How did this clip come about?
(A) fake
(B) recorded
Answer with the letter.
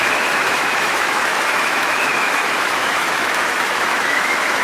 A